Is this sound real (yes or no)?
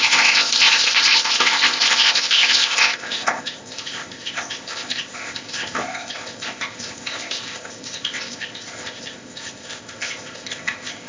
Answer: no